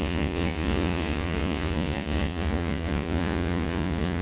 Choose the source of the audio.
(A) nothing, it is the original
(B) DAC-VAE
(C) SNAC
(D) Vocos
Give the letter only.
D